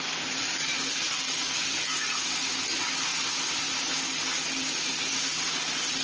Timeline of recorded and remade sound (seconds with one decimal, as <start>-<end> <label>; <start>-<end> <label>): 0.0-6.0 recorded